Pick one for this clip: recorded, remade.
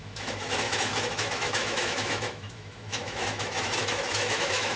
remade